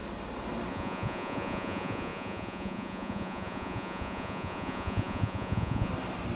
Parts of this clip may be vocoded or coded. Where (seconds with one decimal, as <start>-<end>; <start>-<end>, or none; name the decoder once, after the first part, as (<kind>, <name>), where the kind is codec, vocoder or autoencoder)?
0.7-5.9 (vocoder, Vocos)